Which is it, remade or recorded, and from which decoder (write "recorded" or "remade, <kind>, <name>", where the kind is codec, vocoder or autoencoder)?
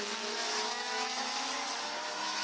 remade, autoencoder, DAC-VAE